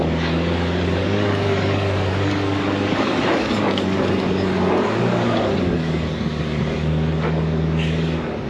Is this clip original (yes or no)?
no